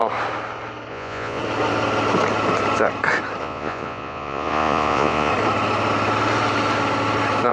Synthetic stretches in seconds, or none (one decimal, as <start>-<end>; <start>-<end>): 0.9-1.4; 3.4-5.3

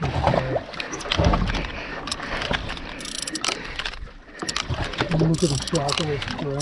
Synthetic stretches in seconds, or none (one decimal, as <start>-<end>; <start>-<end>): 1.7-4.4

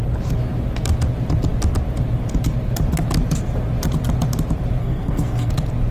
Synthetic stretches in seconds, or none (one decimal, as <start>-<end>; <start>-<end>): 4.8-5.5

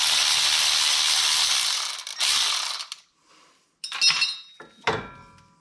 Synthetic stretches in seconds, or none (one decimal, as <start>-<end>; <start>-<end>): none

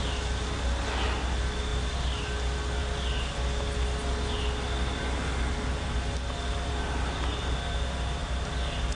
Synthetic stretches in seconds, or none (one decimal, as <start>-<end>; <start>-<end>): none

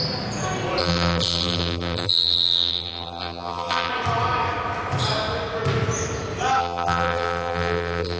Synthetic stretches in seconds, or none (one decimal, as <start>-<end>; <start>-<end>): 0.8-3.9; 6.6-8.2